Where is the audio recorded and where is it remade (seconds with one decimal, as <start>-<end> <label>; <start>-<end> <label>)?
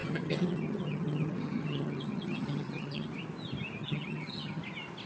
0.0-3.1 remade; 3.1-3.8 recorded; 3.8-4.6 remade; 4.6-5.1 recorded